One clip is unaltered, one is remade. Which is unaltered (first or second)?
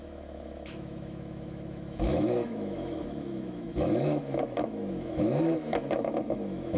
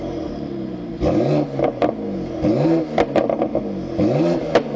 second